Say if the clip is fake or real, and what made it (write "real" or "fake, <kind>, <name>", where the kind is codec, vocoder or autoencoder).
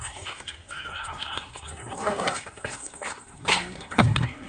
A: fake, codec, SNAC